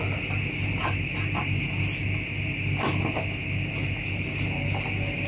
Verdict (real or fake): real